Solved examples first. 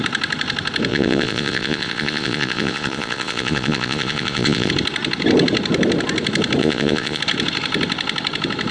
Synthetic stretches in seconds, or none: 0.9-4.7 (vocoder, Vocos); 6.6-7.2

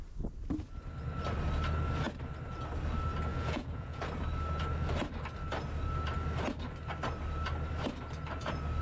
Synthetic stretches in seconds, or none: 3.3-4.0 (vocoder, Vocos)

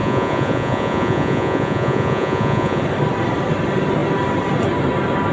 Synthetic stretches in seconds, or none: 0.0-2.8 (vocoder, Vocos)